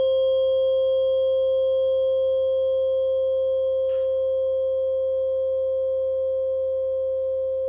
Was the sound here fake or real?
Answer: real